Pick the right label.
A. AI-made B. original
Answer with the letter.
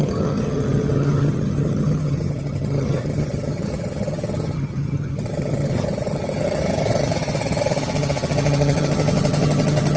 A